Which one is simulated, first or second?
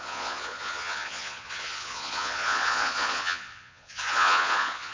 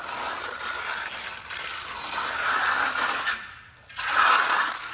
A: first